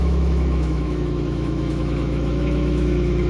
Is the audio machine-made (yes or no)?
yes